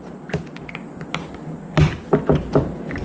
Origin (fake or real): real